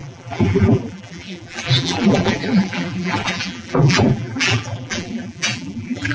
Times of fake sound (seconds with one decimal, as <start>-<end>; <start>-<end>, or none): 0.0-6.1